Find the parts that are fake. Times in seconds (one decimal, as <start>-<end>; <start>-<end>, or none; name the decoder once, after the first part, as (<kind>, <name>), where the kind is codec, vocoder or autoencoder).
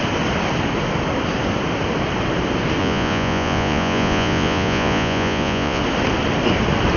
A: 2.8-5.8 (vocoder, Vocos)